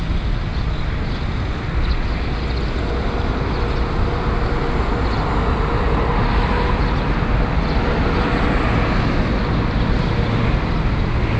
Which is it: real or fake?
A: real